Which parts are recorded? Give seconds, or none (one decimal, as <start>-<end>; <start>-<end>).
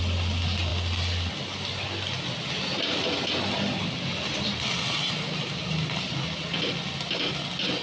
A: 0.0-7.8